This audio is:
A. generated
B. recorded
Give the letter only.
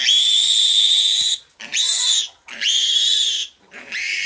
B